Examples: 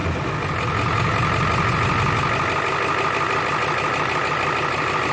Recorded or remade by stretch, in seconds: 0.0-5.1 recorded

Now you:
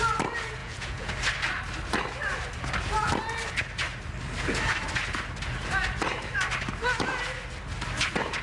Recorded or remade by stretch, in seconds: 0.0-0.6 recorded; 0.6-1.1 remade; 1.1-8.4 recorded

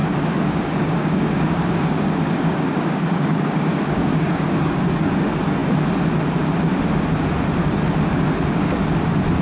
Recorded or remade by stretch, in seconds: 0.0-4.9 remade; 4.9-9.4 recorded